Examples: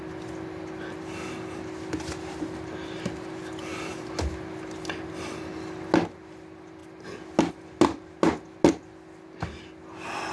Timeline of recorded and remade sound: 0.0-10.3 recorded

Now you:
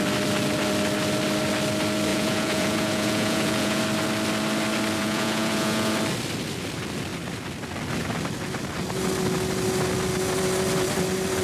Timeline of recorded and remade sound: 0.0-2.1 recorded; 2.1-3.8 remade; 3.8-5.0 recorded; 5.0-5.9 remade; 5.9-11.4 recorded